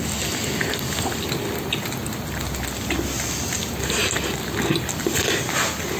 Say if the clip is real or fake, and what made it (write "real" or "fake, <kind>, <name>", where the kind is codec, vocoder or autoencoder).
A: real